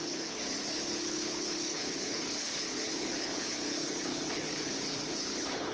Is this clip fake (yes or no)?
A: yes